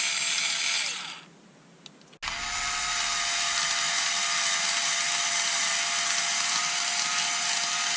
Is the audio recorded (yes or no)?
yes